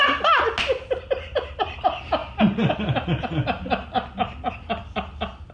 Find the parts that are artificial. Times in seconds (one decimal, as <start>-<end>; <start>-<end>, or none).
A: none